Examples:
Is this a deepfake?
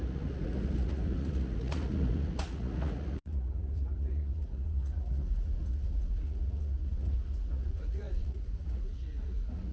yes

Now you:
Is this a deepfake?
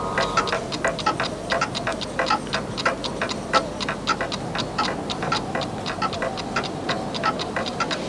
no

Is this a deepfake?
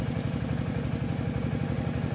no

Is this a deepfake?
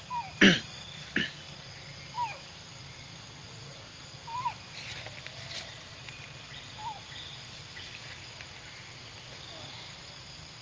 no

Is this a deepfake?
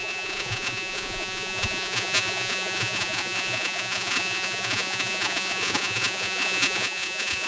yes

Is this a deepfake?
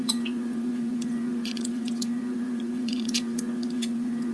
yes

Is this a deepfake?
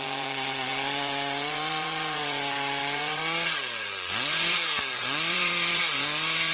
yes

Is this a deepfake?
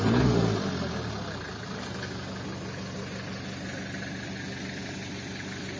no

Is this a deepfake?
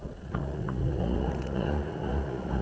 yes